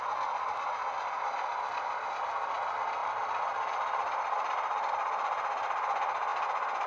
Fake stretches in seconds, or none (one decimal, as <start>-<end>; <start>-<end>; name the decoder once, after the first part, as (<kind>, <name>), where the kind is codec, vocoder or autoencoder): none